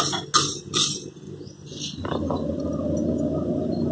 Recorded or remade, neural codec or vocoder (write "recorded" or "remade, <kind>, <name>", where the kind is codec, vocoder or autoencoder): recorded